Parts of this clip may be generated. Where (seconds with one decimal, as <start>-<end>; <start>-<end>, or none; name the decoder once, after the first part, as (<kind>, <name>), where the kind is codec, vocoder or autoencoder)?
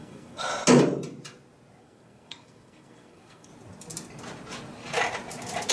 0.0-0.5 (codec, SNAC); 1.8-3.5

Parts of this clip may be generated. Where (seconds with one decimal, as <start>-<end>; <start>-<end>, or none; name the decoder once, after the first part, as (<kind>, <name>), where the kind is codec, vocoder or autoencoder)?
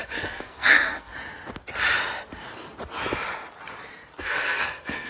0.0-1.1 (codec, SNAC); 4.2-5.1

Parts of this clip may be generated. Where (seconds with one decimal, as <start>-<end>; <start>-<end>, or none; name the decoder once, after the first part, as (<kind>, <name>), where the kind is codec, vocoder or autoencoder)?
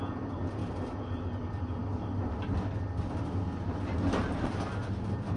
none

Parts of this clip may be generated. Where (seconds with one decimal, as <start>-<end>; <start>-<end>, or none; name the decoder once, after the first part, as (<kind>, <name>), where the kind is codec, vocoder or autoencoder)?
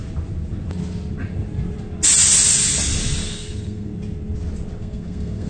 3.3-3.9 (codec, SNAC); 4.8-5.5